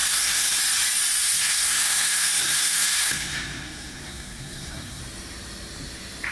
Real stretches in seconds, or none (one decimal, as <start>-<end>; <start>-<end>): 0.6-1.2; 5.0-6.3